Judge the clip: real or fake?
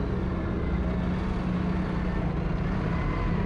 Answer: real